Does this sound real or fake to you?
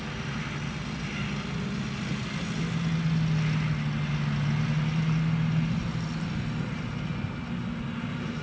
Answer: real